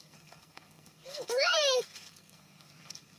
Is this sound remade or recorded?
remade